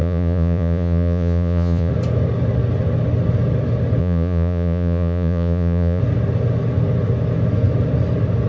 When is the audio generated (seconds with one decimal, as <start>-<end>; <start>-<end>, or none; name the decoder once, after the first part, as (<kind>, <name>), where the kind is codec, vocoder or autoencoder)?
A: 0.0-1.9 (vocoder, Vocos); 4.0-6.0